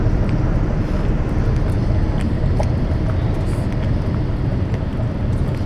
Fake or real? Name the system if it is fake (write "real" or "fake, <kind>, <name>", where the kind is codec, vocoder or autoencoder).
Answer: real